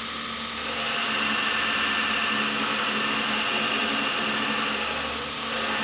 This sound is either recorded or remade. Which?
recorded